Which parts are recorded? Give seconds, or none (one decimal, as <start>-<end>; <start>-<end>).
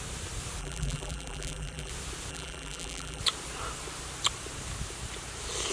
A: 0.0-0.6; 1.9-2.3; 3.2-5.7